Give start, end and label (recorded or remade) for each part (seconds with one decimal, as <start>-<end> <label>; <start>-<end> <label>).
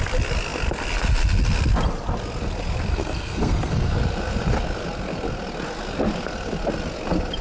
0.0-2.9 recorded; 2.9-3.9 remade; 3.9-7.4 recorded